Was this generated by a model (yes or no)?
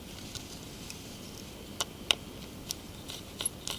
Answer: yes